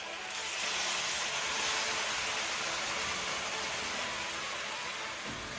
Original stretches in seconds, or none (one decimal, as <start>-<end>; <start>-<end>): 0.0-5.6